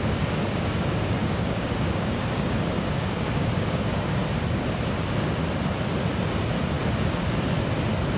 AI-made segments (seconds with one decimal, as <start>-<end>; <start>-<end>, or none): 0.0-4.2